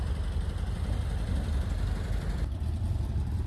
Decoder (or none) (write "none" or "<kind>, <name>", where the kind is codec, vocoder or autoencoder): none